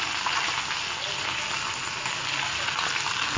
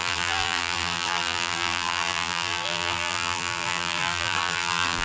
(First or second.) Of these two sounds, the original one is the first